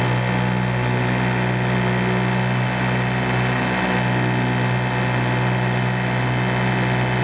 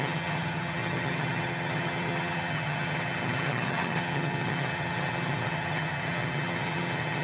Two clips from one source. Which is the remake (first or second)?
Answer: second